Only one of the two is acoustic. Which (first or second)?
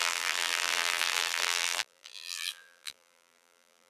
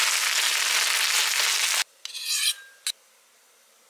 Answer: second